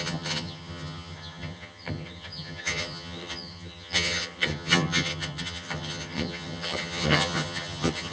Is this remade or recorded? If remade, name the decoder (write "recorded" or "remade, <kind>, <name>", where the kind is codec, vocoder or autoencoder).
remade, vocoder, HiFi-GAN